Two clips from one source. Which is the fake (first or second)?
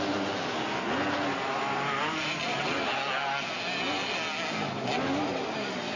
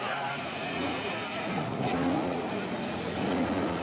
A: second